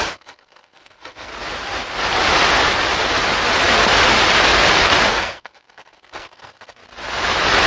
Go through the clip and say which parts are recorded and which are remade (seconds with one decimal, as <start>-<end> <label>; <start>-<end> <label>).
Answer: 0.0-1.3 remade; 1.3-5.1 recorded; 5.1-6.8 remade; 6.8-7.7 recorded